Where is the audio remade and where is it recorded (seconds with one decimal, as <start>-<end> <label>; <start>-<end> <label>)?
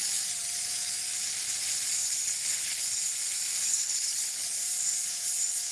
0.0-2.0 recorded; 2.0-2.8 remade; 2.8-3.7 recorded; 3.7-4.6 remade; 4.6-5.7 recorded